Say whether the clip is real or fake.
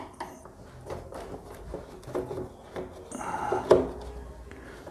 real